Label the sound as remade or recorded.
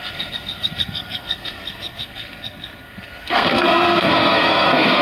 remade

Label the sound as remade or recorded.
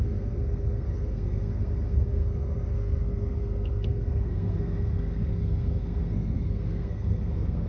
remade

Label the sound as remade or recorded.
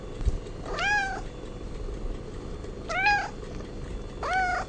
recorded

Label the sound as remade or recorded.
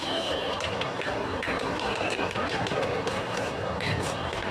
remade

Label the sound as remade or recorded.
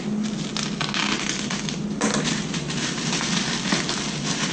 recorded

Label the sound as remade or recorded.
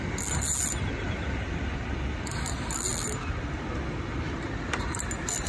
recorded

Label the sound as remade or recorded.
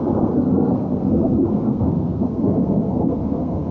remade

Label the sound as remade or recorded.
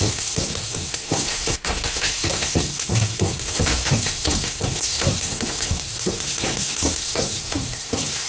remade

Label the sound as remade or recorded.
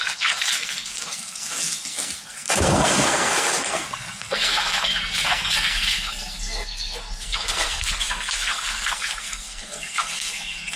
remade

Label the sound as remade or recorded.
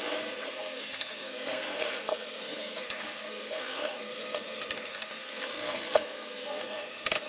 remade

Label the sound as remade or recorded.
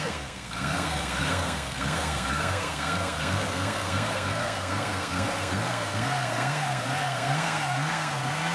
remade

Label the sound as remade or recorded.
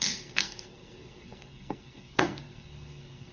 remade